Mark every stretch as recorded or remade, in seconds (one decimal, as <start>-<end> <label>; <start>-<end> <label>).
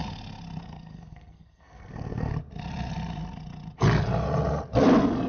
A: 0.0-0.6 recorded; 0.6-2.3 remade; 2.3-5.3 recorded